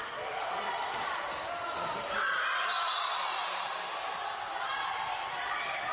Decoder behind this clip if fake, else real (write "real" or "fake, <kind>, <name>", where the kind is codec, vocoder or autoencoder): fake, vocoder, BigVGAN v2